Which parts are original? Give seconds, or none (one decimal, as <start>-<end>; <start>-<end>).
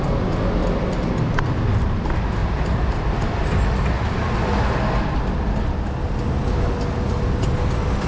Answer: 0.0-0.6; 1.1-2.4; 3.3-8.1